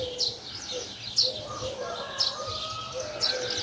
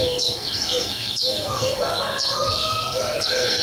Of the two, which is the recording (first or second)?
first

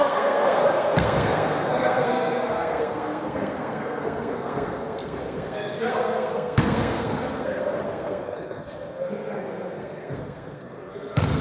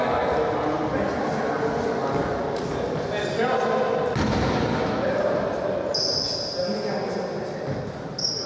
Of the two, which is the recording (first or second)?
second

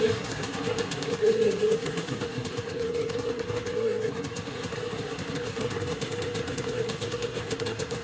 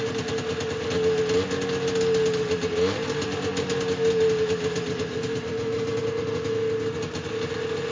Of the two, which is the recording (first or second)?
second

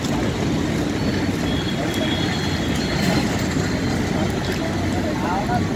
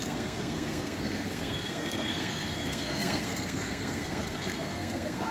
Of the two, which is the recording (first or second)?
first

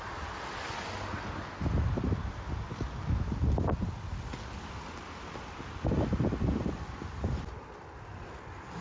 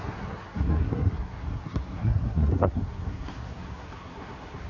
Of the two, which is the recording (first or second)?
first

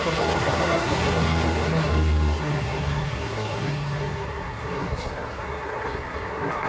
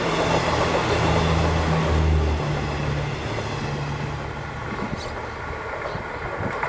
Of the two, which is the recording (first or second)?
second